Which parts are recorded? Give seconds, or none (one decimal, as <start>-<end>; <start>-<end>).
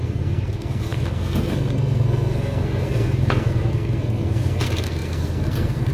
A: none